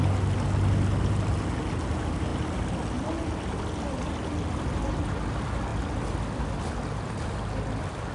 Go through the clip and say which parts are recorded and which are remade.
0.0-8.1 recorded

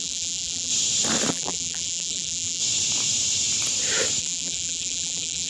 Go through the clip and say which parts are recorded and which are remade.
0.0-0.7 remade; 0.7-1.3 recorded; 1.3-2.6 remade; 2.6-4.2 recorded; 4.2-5.5 remade

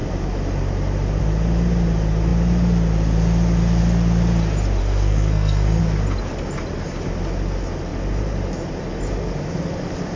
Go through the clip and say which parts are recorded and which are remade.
0.0-4.8 recorded; 4.8-5.8 remade; 5.8-10.2 recorded

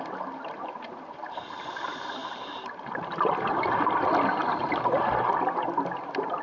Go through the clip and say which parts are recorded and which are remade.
0.0-2.2 recorded; 2.2-3.3 remade; 3.3-4.4 recorded; 4.4-5.1 remade; 5.1-6.4 recorded